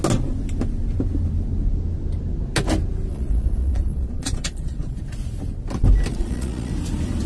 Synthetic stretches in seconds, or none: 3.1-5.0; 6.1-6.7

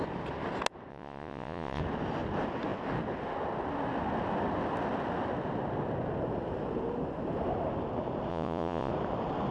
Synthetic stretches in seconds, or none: 0.9-1.8; 8.3-8.9

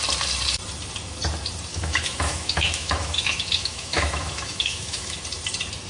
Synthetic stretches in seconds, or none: 1.7-5.2

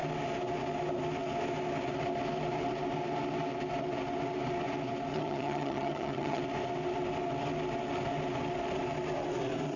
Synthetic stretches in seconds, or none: 5.1-6.4